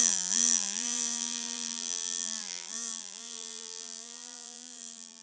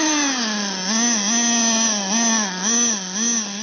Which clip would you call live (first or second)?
second